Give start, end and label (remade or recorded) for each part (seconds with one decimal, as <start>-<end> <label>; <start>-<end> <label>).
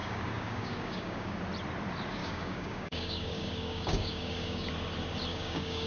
0.0-1.4 remade; 1.4-2.2 recorded; 2.2-4.7 remade; 4.7-5.3 recorded; 5.3-5.9 remade